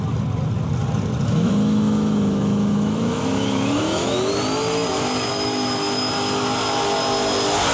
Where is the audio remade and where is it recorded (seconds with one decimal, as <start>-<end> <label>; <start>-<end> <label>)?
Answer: 0.0-1.3 recorded; 1.3-4.3 remade; 4.3-5.3 recorded; 5.3-6.1 remade; 6.1-7.7 recorded